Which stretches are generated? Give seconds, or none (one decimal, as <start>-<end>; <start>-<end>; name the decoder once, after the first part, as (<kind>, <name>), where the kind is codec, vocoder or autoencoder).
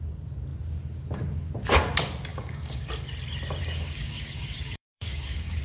2.3-2.9 (codec, DAC); 3.6-5.6